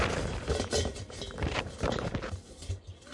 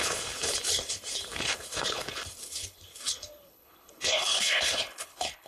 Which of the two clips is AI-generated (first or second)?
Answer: second